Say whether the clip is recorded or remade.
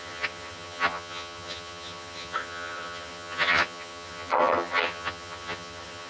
remade